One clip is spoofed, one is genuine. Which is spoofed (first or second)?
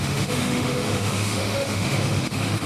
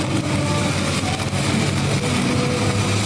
first